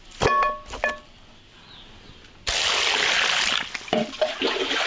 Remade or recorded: recorded